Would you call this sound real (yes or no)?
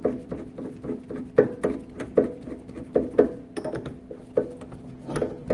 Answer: yes